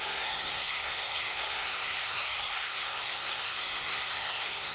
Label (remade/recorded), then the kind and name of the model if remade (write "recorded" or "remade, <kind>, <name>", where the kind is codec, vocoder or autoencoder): remade, codec, SNAC